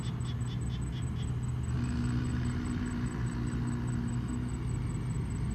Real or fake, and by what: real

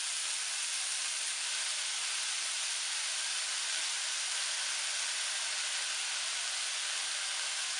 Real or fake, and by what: real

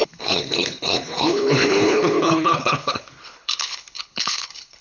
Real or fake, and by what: fake, codec, HILCodec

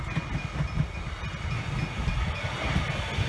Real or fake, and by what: real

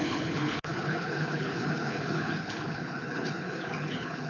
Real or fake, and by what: fake, codec, HILCodec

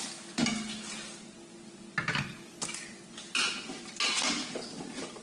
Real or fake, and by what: real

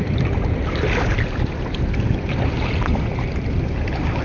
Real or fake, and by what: real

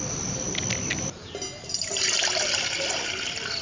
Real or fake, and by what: real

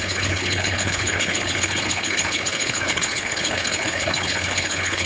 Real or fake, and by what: fake, codec, HILCodec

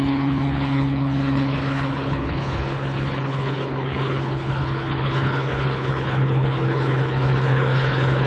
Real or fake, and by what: fake, codec, HILCodec